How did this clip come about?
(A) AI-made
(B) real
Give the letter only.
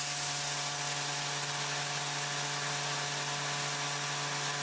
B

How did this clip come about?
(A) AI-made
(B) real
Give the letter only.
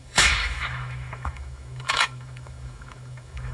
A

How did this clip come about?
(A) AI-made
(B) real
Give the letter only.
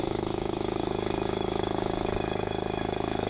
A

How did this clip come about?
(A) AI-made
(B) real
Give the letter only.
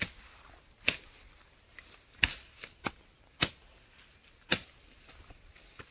B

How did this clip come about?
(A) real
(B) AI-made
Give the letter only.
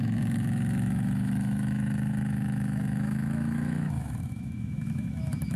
B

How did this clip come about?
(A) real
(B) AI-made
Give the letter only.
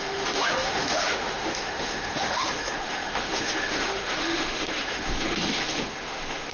B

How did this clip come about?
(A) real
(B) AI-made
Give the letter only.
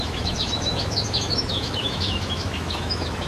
B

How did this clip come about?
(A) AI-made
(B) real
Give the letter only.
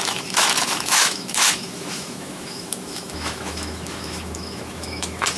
A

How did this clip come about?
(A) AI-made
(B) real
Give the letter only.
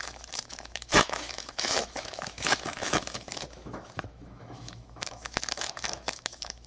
A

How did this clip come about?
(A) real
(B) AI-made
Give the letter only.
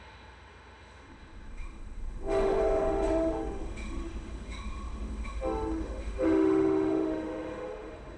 B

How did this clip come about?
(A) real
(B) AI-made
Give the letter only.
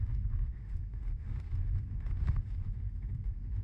B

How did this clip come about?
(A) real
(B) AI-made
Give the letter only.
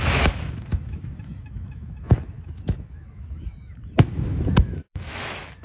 B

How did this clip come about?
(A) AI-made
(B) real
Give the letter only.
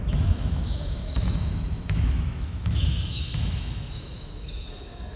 A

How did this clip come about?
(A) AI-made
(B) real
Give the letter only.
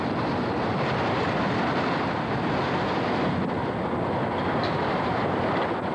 B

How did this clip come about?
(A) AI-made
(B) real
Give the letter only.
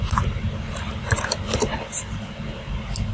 B